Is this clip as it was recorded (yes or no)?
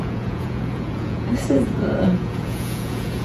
no